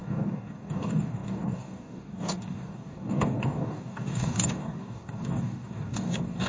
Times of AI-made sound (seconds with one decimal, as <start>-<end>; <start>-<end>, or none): 0.0-6.5